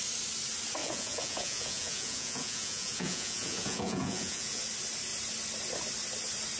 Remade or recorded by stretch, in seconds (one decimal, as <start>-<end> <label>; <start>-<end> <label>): 0.0-0.8 recorded; 0.8-4.6 remade; 4.6-6.6 recorded